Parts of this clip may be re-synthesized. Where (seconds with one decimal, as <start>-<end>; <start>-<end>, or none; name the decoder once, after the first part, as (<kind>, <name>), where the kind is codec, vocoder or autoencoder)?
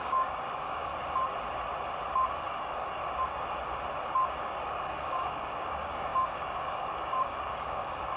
0.0-0.9 (codec, DAC); 2.3-3.0; 4.4-8.2